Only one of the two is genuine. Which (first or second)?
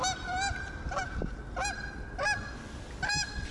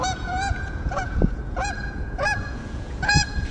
first